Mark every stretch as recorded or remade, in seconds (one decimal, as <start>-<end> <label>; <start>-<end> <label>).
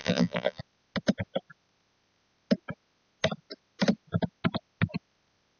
0.0-0.6 remade; 0.6-5.6 recorded